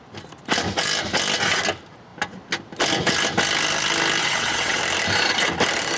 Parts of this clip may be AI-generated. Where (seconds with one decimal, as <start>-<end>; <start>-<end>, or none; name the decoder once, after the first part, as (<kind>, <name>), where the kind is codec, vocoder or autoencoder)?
4.2-4.8 (vocoder, WaveNeXt)